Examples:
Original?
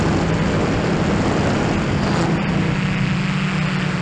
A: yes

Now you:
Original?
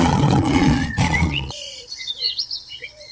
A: no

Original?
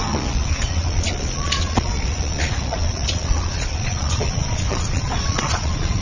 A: no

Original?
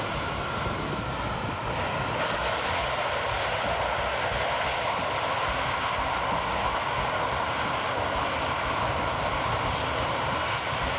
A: yes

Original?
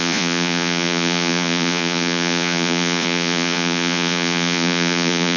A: no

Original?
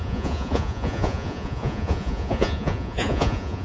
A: no